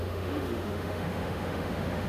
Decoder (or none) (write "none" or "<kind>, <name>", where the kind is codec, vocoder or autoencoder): autoencoder, DAC-VAE